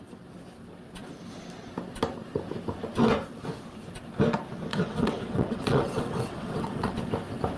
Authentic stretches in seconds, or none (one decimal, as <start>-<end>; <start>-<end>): 0.0-4.7; 7.0-7.6